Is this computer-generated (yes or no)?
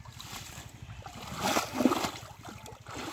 no